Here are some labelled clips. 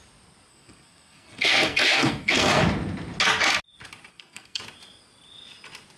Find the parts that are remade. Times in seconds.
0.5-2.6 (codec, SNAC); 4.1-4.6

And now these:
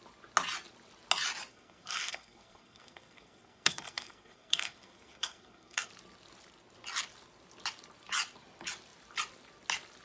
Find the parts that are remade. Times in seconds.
1.5-5.9 (codec, SNAC)

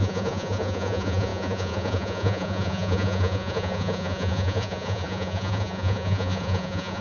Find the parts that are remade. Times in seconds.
0.0-7.0 (vocoder, Vocos)

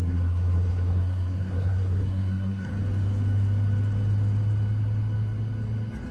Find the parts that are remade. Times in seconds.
0.0-2.7 (codec, SNAC)

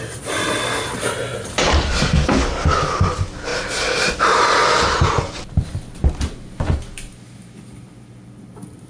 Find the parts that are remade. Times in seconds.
none